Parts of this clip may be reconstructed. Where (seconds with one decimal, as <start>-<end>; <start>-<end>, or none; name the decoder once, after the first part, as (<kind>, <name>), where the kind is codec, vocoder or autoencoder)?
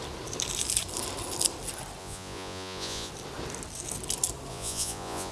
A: 2.0-3.1 (vocoder, Vocos); 4.5-5.3